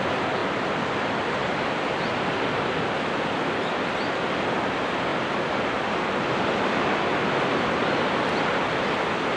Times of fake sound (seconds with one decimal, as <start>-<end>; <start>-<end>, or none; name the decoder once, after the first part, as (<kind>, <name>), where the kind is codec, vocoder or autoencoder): none

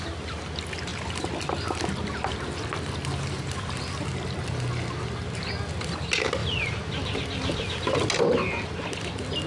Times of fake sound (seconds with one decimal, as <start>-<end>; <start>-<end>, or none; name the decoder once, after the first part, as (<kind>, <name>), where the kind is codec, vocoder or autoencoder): none

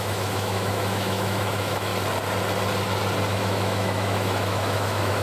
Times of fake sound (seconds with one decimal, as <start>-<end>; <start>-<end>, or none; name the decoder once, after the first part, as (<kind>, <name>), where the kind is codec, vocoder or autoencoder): 0.0-1.9 (autoencoder, DAC-VAE); 3.3-5.2

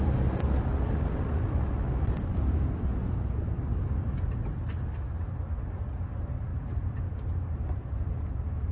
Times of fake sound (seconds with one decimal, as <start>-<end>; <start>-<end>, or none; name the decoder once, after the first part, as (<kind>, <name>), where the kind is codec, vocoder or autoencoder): none

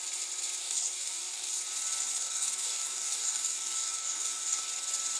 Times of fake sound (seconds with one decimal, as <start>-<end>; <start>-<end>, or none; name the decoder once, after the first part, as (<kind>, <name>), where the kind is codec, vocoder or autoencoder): 0.6-1.6 (codec, DAC); 2.1-4.7

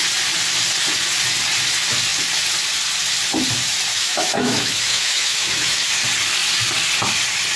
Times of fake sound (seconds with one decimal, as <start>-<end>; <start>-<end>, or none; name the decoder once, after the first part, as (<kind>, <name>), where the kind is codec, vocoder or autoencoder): 3.9-5.9 (autoencoder, DAC-VAE)

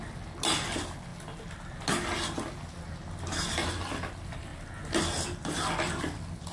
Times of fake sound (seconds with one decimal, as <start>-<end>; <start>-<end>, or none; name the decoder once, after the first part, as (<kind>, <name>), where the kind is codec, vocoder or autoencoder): none

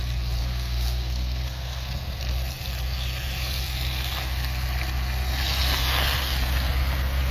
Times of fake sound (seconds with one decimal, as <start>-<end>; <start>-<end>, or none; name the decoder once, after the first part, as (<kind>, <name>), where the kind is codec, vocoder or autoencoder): 0.4-2.2 (codec, SNAC)